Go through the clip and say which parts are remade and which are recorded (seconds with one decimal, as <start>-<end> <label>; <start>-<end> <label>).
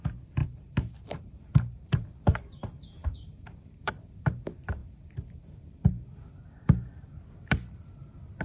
0.0-0.4 recorded; 0.4-2.4 remade; 2.4-3.0 recorded; 3.0-3.9 remade; 3.9-8.4 recorded